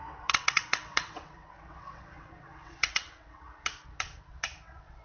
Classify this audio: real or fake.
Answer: fake